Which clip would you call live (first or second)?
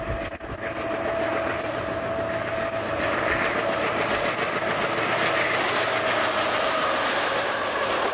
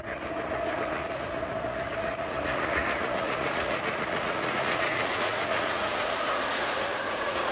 first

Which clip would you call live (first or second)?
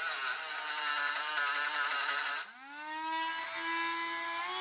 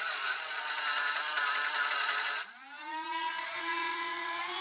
first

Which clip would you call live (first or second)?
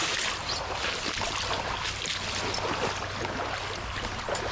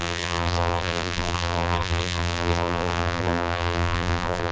first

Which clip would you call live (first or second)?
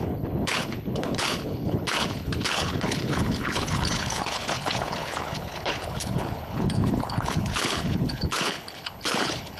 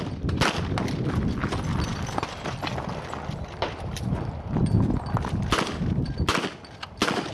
second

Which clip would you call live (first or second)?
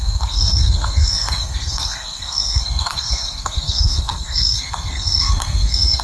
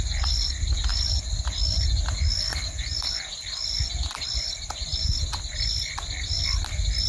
second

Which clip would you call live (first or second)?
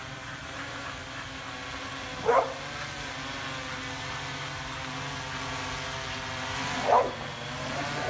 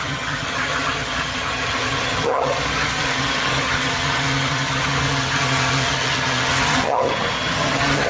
first